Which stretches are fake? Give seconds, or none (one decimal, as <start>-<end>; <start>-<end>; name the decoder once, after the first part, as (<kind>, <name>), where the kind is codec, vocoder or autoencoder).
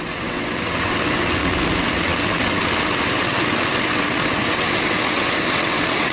0.0-6.1 (vocoder, WaveNeXt)